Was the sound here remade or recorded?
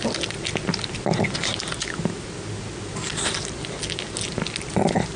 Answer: recorded